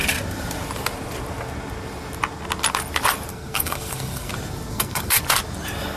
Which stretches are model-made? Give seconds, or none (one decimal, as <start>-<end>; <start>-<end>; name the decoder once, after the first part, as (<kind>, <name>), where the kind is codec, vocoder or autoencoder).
3.3-4.3 (codec, SNAC); 4.7-5.2